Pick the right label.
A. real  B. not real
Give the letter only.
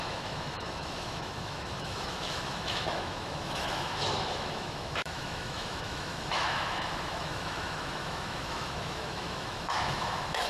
B